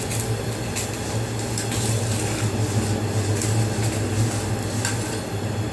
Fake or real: real